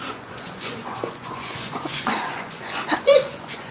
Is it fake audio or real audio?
fake